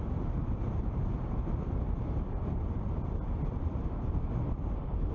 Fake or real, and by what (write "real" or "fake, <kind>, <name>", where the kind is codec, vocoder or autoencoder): real